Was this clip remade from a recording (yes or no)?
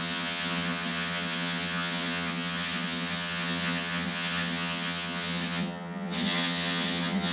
yes